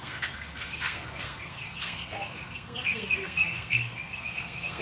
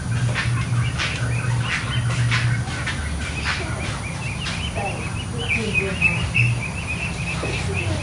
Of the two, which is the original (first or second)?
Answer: second